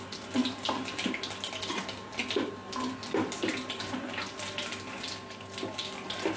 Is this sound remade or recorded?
recorded